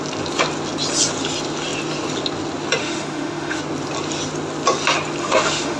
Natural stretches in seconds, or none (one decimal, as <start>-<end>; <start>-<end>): 0.0-2.8; 3.6-5.2